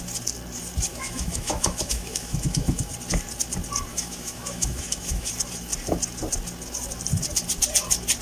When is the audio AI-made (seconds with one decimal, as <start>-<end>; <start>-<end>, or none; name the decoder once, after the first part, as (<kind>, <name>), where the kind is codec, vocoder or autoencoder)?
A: 0.9-2.9 (autoencoder, DAC-VAE); 3.9-5.3